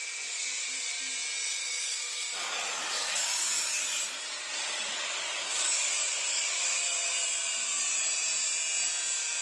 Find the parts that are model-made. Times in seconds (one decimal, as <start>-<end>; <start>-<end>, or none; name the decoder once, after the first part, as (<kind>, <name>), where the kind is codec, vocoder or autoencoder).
1.6-3.8 (codec, DAC); 4.6-6.8